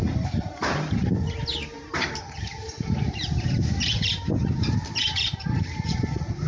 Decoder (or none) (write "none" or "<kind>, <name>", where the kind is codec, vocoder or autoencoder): vocoder, BigVGAN v2